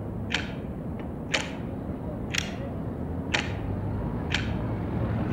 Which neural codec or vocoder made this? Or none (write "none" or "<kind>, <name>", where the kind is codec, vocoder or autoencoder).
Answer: none